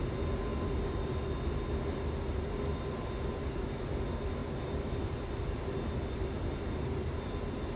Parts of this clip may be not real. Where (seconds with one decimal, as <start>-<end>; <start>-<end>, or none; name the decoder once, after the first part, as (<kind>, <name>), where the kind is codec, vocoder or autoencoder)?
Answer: none